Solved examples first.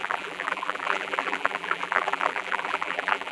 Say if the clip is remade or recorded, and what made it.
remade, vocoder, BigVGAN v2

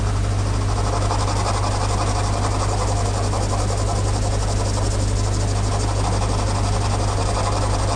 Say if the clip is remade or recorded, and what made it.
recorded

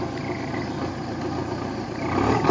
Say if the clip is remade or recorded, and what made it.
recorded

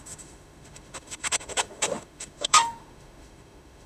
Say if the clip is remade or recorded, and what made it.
remade, autoencoder, DAC-VAE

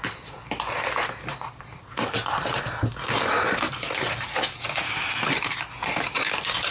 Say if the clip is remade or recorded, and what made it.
recorded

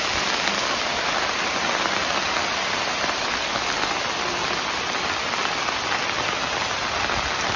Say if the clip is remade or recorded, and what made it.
recorded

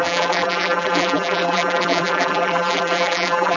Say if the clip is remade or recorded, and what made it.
remade, vocoder, BigVGAN v2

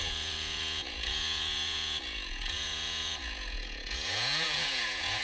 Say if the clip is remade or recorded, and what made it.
remade, vocoder, Vocos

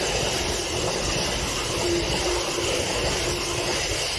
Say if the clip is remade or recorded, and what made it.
recorded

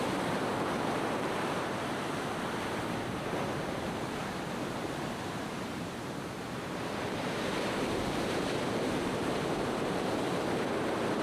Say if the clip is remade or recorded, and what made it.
remade, vocoder, BigVGAN v2